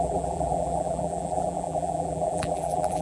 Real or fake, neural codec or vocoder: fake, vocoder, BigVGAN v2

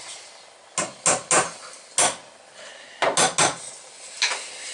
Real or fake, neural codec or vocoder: real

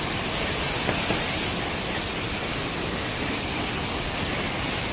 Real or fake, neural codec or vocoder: real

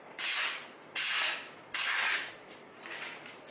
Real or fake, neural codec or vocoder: real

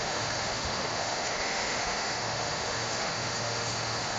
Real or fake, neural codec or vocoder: fake, autoencoder, DAC-VAE